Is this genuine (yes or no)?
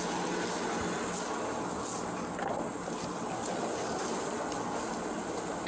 yes